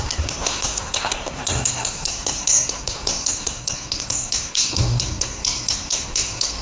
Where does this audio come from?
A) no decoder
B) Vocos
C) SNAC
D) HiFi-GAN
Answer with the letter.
C